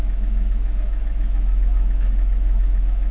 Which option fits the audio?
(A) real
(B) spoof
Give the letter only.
B